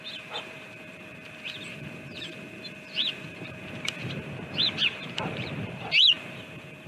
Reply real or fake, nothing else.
fake